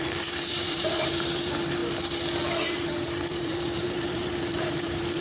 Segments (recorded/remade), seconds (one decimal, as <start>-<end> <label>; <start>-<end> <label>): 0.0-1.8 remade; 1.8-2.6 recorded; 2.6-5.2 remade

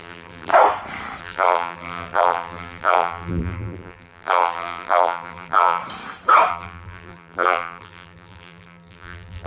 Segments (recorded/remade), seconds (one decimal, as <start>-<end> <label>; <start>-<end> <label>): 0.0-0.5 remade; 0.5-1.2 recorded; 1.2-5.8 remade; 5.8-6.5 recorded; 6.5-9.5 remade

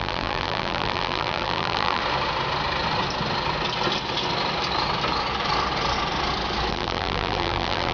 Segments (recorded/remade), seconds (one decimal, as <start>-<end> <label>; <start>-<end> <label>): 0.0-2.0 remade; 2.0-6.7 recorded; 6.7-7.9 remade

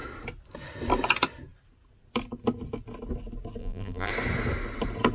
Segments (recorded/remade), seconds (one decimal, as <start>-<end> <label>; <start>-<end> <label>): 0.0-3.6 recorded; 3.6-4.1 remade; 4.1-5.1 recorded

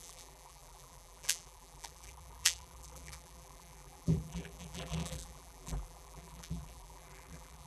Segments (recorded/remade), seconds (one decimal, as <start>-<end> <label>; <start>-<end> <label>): 0.0-7.7 remade